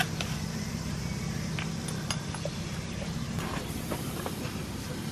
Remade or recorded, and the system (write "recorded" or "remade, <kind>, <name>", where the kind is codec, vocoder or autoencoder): recorded